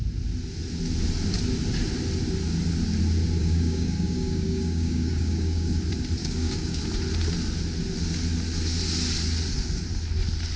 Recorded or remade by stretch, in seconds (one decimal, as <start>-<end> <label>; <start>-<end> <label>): 0.0-3.4 recorded; 3.4-5.7 remade; 5.7-6.2 recorded; 6.2-6.8 remade; 6.8-10.6 recorded